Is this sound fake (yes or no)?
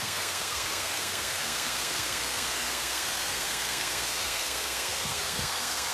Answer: yes